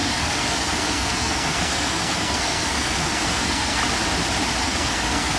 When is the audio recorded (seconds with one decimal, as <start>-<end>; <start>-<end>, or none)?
3.8-4.6